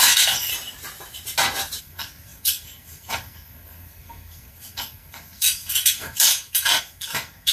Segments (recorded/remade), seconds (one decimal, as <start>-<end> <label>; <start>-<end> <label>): 0.0-0.5 remade; 0.5-1.8 recorded; 1.8-7.5 remade